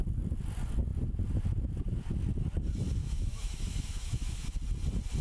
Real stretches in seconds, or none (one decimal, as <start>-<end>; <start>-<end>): 0.0-3.0; 4.5-5.2

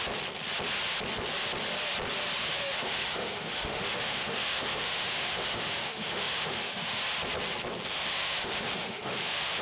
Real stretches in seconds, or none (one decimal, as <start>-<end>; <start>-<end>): 0.0-2.4; 7.0-7.9

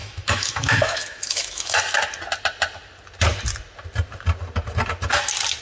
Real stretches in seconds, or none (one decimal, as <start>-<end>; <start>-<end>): 1.8-5.6